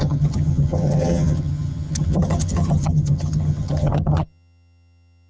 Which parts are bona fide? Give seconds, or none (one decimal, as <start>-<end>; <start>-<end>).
none

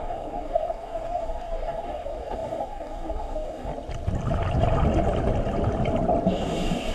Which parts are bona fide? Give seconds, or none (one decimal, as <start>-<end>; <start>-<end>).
3.7-6.3

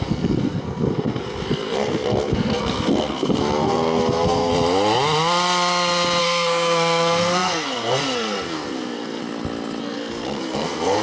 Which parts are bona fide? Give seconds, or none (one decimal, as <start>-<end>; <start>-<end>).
4.5-6.2; 9.2-9.8

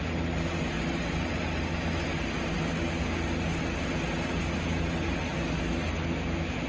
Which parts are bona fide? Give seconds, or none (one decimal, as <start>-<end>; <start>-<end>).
0.0-6.7

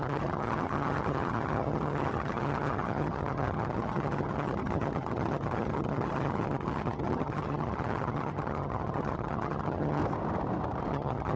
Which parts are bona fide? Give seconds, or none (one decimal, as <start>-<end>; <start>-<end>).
10.0-10.9

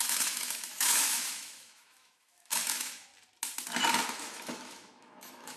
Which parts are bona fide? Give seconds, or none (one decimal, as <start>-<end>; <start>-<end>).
3.1-4.1